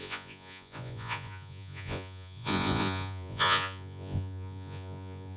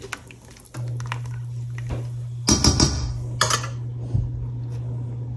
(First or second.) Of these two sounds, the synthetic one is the first